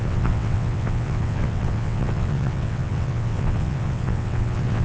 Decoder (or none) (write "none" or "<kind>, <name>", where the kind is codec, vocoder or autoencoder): vocoder, WaveNeXt